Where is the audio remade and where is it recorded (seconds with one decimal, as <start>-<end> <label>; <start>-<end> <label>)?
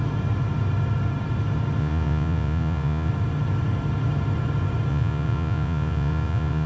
0.0-1.8 recorded; 1.8-3.1 remade; 3.1-4.9 recorded; 4.9-6.7 remade